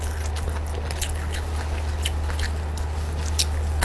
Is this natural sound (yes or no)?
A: yes